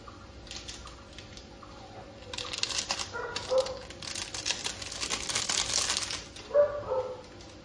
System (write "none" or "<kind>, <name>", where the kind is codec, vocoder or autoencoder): none